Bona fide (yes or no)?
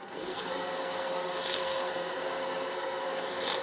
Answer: no